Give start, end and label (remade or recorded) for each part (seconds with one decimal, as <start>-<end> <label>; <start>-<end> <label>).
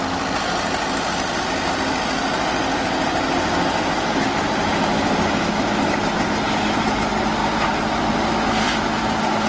0.0-9.5 recorded